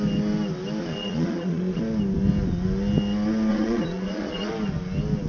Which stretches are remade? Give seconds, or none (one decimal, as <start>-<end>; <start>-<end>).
0.8-1.8; 3.5-4.5